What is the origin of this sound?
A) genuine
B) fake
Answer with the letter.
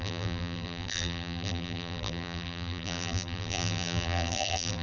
B